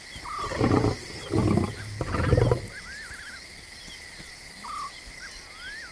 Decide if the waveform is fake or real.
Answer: real